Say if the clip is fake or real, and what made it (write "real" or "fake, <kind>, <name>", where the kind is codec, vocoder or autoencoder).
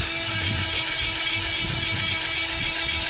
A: real